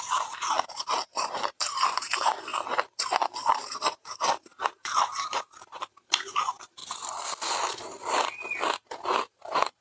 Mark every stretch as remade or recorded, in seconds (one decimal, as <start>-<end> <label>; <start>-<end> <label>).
0.0-2.5 remade; 2.5-3.0 recorded; 3.0-6.8 remade; 6.8-9.0 recorded; 9.0-9.8 remade